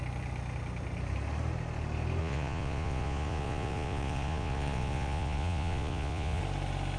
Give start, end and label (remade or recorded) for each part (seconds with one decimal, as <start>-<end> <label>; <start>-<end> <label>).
0.0-2.2 recorded; 2.2-6.4 remade; 6.4-7.0 recorded